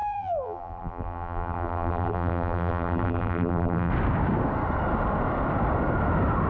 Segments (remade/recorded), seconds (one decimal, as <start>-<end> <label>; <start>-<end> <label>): 0.0-3.9 remade; 3.9-6.5 recorded